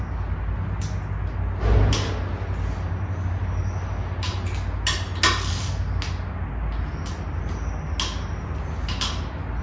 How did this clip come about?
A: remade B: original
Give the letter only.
B